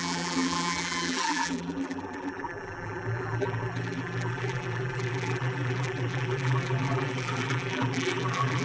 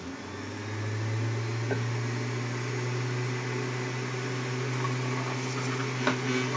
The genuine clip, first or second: second